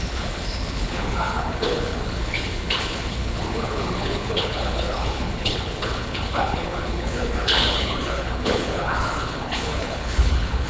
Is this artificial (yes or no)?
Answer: yes